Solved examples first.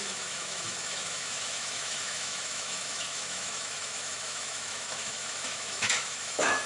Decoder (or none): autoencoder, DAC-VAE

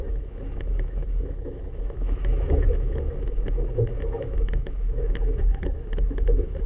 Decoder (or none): autoencoder, DAC-VAE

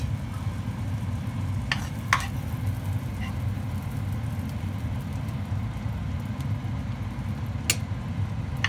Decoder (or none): none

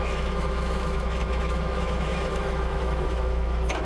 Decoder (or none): autoencoder, DAC-VAE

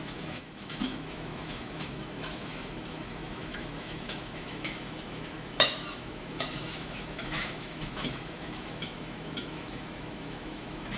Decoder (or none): autoencoder, DAC-VAE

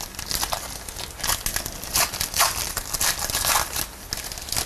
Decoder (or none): none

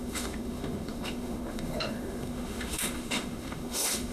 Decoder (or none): autoencoder, DAC-VAE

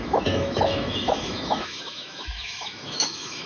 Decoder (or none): autoencoder, DAC-VAE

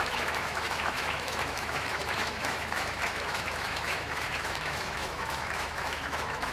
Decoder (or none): autoencoder, DAC-VAE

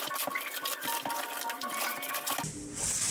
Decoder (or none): none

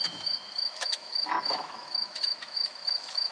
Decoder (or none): autoencoder, DAC-VAE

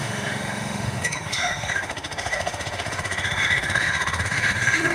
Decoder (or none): autoencoder, DAC-VAE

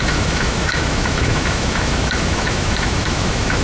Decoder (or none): autoencoder, DAC-VAE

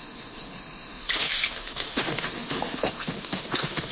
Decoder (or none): autoencoder, DAC-VAE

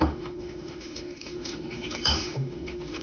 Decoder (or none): autoencoder, DAC-VAE